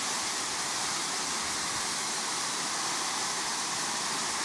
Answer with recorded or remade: recorded